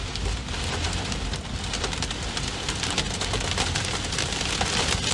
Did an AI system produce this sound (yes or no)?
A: no